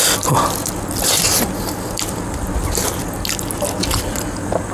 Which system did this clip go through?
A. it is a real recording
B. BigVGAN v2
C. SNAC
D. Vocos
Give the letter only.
A